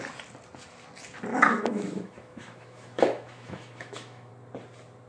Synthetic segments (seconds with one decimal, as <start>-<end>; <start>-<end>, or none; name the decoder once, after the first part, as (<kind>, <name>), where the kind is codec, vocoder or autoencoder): 1.3-4.3 (autoencoder, DAC-VAE)